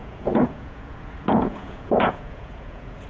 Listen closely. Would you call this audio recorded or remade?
remade